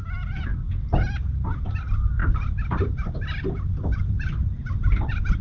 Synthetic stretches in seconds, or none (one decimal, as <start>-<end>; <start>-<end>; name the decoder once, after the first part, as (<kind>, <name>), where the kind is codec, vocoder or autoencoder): none